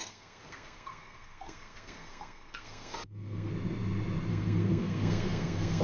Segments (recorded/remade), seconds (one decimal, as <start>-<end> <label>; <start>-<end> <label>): 0.0-3.5 remade; 3.5-4.3 recorded; 4.3-5.8 remade

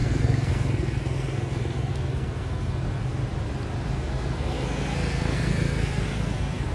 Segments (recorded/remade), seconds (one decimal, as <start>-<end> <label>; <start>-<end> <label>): 0.0-3.2 remade; 3.2-3.9 recorded; 3.9-6.7 remade

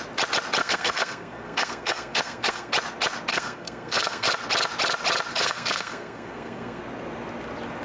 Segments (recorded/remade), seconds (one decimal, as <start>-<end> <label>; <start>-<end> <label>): 0.0-0.6 recorded; 0.6-2.7 remade; 2.7-3.3 recorded; 3.3-4.3 remade; 4.3-5.3 recorded; 5.3-6.8 remade; 6.8-7.8 recorded

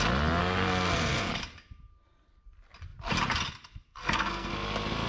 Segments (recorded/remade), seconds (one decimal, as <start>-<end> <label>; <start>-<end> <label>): 0.0-0.4 recorded; 0.4-1.3 remade; 1.3-3.9 recorded; 3.9-4.5 remade; 4.5-5.1 recorded

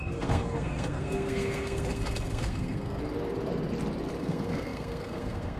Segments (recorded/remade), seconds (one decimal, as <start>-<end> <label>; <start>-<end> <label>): 0.0-3.0 remade; 3.0-4.2 recorded; 4.2-5.6 remade

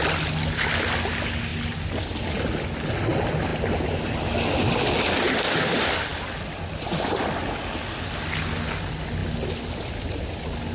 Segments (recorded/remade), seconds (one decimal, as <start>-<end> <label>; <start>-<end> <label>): 0.0-10.7 recorded

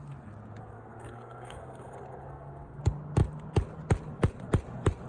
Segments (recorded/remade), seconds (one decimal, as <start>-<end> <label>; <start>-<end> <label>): 0.0-0.6 recorded; 0.6-2.8 remade; 2.8-5.1 recorded